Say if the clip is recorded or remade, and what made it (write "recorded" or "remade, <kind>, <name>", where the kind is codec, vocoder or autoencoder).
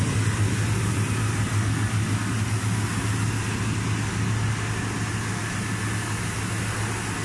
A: recorded